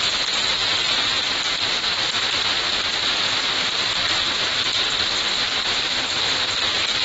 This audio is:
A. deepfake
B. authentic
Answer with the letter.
B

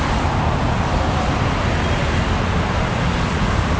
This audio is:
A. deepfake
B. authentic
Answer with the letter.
B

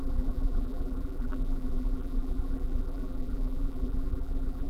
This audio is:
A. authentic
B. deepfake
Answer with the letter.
B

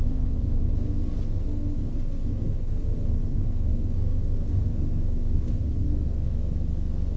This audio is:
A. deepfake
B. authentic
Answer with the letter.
A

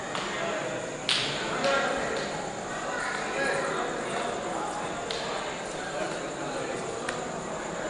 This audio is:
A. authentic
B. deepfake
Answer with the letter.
A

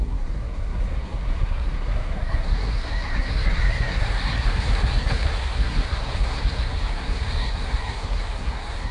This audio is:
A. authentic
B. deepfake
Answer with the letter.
B